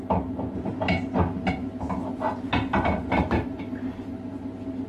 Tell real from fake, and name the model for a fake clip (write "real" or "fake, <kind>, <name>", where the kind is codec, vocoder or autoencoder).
real